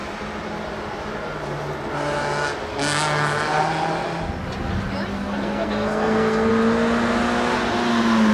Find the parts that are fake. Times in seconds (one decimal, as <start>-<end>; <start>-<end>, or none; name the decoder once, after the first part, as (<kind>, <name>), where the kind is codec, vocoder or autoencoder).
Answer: 5.1-6.5 (codec, SNAC)

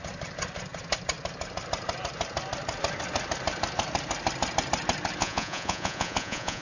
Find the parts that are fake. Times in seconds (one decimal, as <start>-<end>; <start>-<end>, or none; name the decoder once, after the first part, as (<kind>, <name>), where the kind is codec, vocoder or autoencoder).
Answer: 5.2-6.6 (vocoder, Vocos)